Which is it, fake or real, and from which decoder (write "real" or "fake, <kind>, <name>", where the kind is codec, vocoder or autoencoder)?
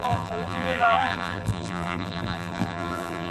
fake, vocoder, BigVGAN v2